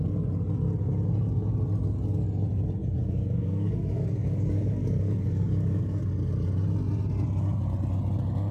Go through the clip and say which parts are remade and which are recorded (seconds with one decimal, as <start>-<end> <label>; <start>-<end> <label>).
0.0-2.8 recorded; 2.8-6.0 remade; 6.0-8.5 recorded